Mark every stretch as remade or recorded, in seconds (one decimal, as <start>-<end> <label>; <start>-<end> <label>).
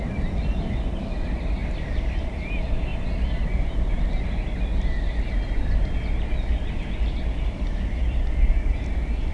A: 0.0-9.3 recorded